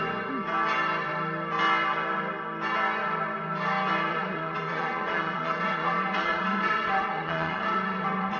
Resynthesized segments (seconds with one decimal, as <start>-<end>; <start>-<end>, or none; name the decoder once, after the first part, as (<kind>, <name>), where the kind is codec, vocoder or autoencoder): 4.1-8.4 (vocoder, WaveNeXt)